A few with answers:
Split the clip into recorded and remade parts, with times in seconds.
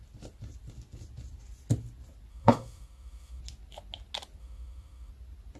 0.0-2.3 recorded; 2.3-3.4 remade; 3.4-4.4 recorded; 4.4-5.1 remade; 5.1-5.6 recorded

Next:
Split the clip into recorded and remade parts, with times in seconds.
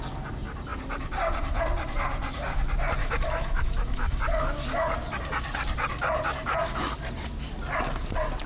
0.0-3.0 recorded; 3.0-4.2 remade; 4.2-8.5 recorded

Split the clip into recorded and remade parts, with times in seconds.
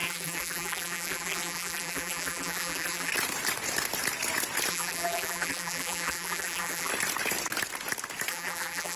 0.0-3.1 remade; 3.1-4.7 recorded; 4.7-6.9 remade; 6.9-8.3 recorded; 8.3-9.0 remade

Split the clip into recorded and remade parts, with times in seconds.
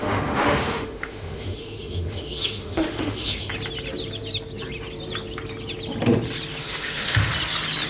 0.0-3.5 remade; 3.5-6.6 recorded; 6.6-7.3 remade; 7.3-7.9 recorded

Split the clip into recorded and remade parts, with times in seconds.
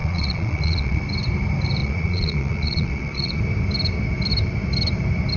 0.0-1.0 remade; 1.0-1.8 recorded; 1.8-3.4 remade; 3.4-5.4 recorded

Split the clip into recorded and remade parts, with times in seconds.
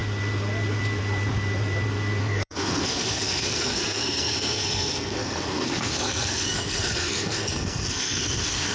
0.0-2.2 recorded; 2.2-8.7 remade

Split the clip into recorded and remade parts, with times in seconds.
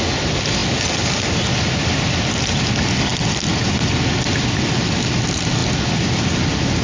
0.0-6.8 recorded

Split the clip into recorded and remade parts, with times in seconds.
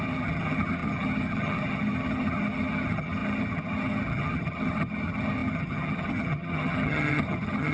0.0-7.7 remade